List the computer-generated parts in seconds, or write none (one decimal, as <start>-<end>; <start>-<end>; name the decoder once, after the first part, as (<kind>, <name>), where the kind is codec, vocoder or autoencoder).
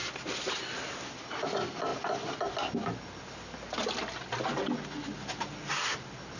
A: none